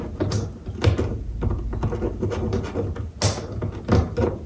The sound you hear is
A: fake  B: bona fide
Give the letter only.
B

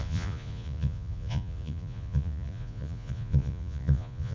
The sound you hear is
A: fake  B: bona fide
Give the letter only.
A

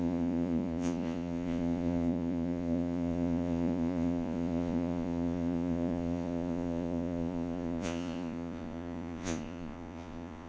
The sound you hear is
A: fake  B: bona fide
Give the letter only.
A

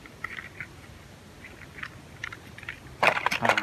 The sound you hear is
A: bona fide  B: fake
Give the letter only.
A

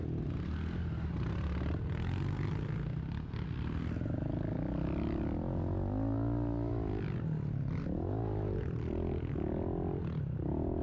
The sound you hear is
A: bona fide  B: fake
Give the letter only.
A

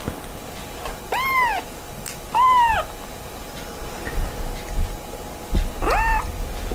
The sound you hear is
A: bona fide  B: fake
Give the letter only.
A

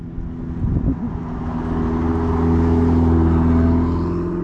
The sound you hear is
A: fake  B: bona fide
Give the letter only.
B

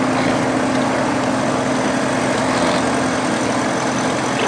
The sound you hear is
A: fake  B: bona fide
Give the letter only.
B